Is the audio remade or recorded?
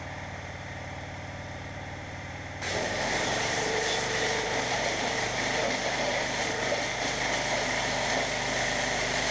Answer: remade